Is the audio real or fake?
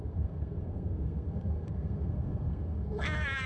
fake